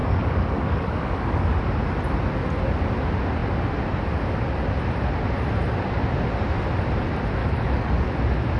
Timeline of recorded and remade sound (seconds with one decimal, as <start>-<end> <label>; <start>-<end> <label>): 0.0-1.6 remade; 1.6-7.4 recorded; 7.4-8.1 remade; 8.1-8.6 recorded